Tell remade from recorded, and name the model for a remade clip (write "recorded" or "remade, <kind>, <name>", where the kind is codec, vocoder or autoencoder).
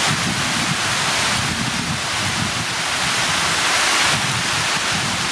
recorded